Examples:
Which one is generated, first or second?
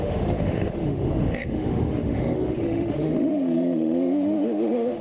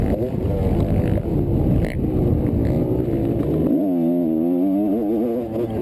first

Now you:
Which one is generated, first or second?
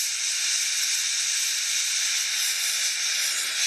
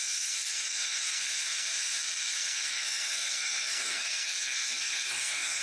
second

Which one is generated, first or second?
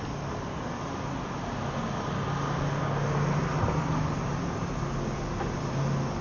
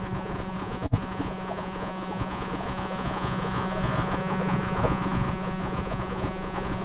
second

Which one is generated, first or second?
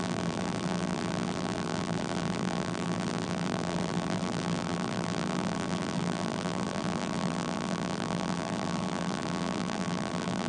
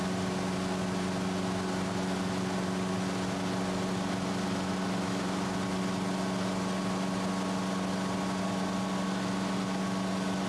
first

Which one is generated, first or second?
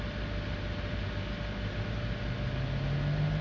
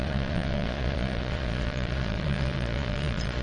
second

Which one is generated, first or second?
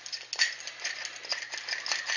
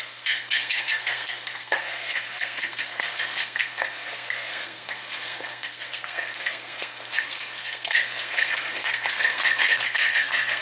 second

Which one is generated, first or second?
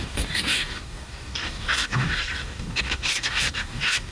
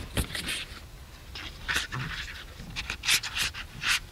first